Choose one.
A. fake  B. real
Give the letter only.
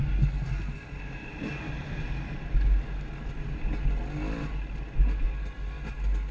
B